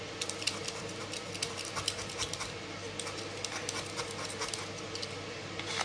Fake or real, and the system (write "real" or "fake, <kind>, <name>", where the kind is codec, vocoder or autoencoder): real